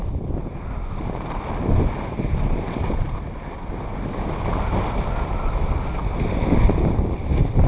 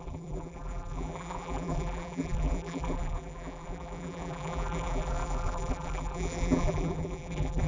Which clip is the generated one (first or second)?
second